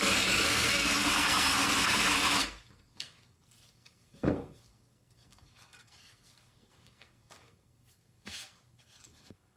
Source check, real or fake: fake